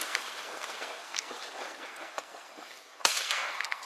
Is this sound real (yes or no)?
no